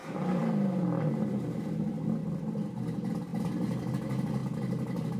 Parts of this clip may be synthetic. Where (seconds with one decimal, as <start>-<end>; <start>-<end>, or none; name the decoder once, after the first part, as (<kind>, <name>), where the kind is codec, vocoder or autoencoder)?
0.0-1.1 (vocoder, BigVGAN v2); 2.2-2.7